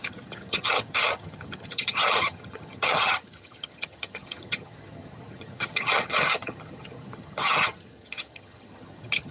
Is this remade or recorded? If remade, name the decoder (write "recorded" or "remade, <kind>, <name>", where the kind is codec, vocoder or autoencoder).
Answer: remade, vocoder, HiFi-GAN